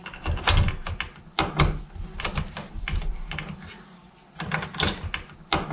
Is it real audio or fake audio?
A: real